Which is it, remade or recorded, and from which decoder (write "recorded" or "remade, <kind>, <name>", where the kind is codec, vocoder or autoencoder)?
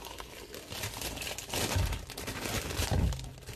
recorded